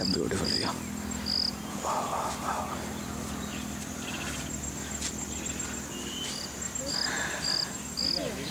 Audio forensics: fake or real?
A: real